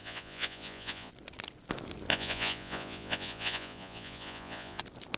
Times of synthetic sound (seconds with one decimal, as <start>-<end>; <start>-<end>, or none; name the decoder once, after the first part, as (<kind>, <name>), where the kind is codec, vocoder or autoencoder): 0.0-1.1 (vocoder, Vocos); 2.1-4.8